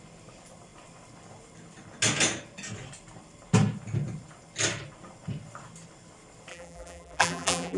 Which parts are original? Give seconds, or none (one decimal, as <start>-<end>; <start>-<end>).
0.0-6.5